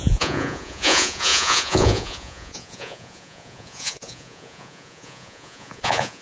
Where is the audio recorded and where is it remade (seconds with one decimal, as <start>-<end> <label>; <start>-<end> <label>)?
0.0-6.2 remade